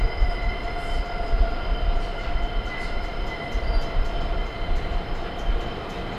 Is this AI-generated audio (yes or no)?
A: no